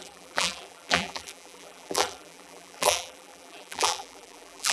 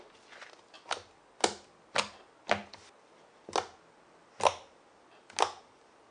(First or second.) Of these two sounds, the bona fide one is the second